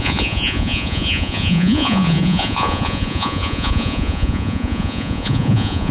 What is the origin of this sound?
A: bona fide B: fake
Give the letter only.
B